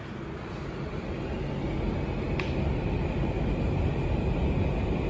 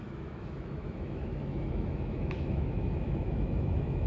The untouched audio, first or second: first